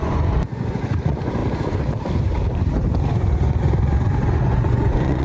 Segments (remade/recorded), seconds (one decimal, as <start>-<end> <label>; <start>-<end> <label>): 0.0-1.4 remade; 1.4-3.1 recorded; 3.1-5.2 remade